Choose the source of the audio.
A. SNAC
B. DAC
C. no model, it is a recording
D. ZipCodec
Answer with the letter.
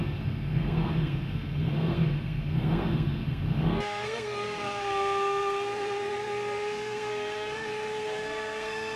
A